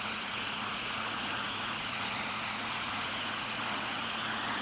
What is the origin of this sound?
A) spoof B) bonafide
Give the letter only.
A